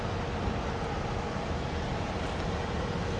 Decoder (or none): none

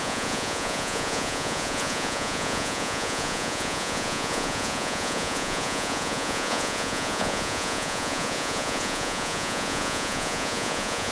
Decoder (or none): vocoder, Vocos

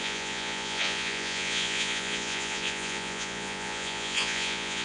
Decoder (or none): vocoder, Vocos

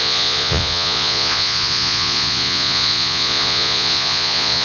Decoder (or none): vocoder, Vocos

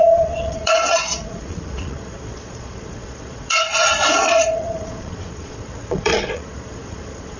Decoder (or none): vocoder, Vocos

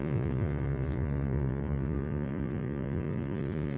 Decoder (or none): vocoder, Vocos